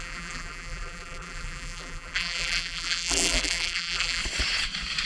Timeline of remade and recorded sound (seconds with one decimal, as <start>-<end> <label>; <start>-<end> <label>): 0.0-4.2 remade; 4.2-5.1 recorded

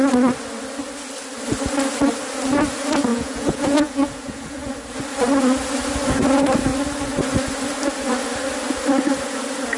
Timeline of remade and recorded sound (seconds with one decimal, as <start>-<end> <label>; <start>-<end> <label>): 0.0-3.1 recorded; 3.1-4.7 remade; 4.7-9.8 recorded

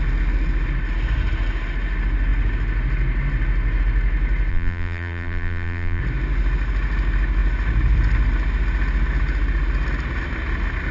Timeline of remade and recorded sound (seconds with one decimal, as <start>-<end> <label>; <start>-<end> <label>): 0.0-4.5 recorded; 4.5-6.0 remade; 6.0-10.9 recorded

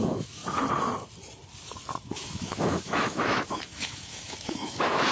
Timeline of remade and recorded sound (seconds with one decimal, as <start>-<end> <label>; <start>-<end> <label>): 0.0-0.4 remade; 0.4-2.0 recorded; 2.0-5.1 remade